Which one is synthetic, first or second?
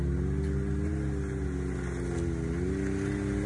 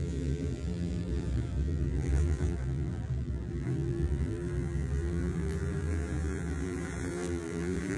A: second